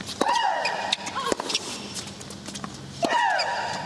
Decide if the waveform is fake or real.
real